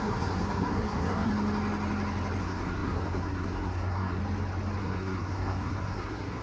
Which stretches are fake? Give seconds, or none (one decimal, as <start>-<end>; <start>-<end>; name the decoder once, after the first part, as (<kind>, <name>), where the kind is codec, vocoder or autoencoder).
0.0-1.3 (codec, SNAC); 2.4-4.2; 4.8-6.4